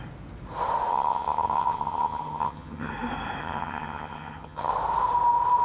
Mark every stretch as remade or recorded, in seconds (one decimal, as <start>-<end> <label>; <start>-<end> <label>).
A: 0.0-0.9 recorded; 0.9-2.9 remade; 2.9-3.4 recorded; 3.4-4.7 remade; 4.7-5.6 recorded